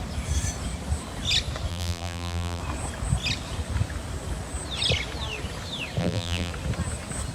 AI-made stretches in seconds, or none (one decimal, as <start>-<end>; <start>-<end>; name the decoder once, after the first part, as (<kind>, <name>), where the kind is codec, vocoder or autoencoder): 1.7-2.6 (vocoder, BigVGAN v2); 6.0-6.5